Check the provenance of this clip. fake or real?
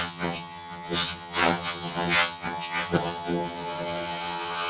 fake